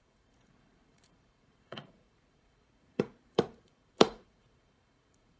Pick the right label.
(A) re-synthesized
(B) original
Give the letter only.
A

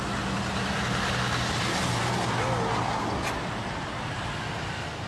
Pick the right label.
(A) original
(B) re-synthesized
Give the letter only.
A